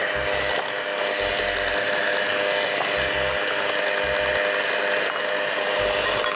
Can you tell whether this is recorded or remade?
recorded